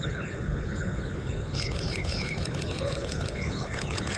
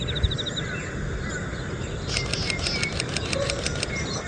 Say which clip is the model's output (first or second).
first